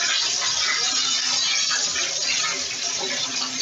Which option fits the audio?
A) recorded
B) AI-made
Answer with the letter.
A